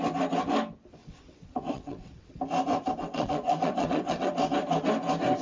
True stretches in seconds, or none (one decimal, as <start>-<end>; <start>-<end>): 0.0-1.0; 2.4-3.0; 4.3-5.4